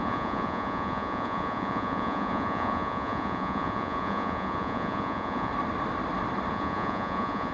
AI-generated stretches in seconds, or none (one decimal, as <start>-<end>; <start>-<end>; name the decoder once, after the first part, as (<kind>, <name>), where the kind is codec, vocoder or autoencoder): 0.0-5.5 (vocoder, Vocos); 6.5-7.5